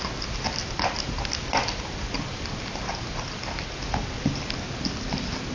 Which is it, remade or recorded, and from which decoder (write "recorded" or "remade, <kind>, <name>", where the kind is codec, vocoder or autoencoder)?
recorded